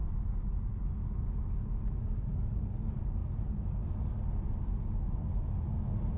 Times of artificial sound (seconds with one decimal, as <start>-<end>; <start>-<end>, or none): none